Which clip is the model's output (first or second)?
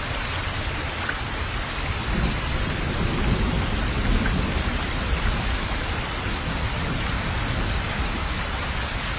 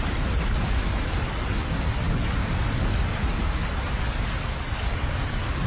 first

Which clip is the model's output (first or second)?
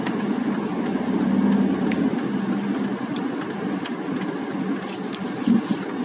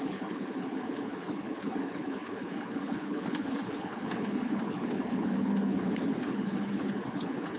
second